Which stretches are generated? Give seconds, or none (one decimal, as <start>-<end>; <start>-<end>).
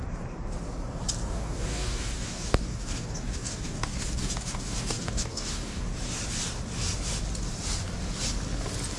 1.2-5.8